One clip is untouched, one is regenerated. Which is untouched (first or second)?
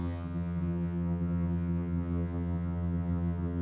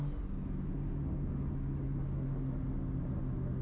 second